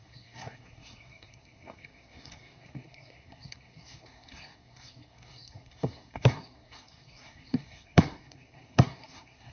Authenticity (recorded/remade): remade